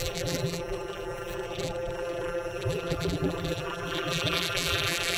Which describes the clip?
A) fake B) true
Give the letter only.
A